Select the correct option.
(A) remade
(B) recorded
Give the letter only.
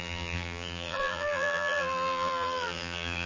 A